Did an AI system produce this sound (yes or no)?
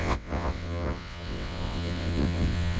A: yes